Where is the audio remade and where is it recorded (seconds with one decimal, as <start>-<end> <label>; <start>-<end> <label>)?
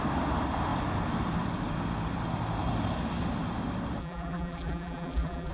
0.0-4.0 recorded; 4.0-5.5 remade